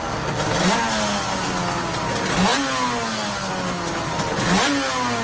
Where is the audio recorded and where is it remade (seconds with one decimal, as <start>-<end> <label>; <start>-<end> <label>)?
0.0-5.2 recorded